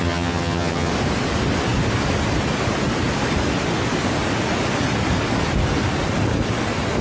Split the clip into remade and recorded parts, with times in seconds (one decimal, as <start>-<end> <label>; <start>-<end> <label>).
0.0-0.9 remade; 0.9-7.0 recorded